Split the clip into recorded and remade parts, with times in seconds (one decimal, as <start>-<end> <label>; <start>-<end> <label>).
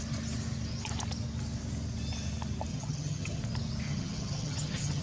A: 0.0-2.7 recorded; 2.7-3.4 remade; 3.4-3.9 recorded; 3.9-5.0 remade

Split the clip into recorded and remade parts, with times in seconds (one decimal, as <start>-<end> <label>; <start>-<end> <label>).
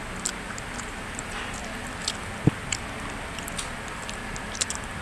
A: 0.0-5.0 recorded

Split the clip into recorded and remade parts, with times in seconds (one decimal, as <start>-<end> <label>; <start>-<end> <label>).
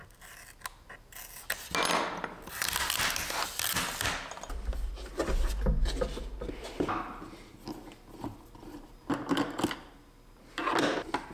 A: 0.0-11.3 recorded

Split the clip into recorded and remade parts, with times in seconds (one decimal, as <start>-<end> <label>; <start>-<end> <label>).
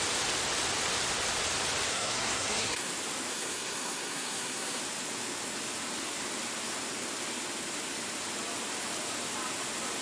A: 0.0-1.9 recorded; 1.9-2.9 remade; 2.9-3.3 recorded; 3.3-4.8 remade; 4.8-10.0 recorded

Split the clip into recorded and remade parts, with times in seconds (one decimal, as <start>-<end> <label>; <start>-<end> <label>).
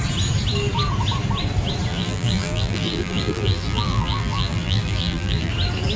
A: 0.0-1.9 recorded; 1.9-5.5 remade; 5.5-6.0 recorded